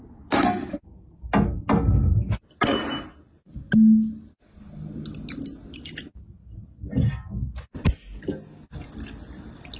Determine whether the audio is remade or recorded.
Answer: recorded